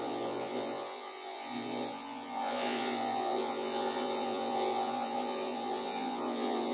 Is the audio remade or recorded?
remade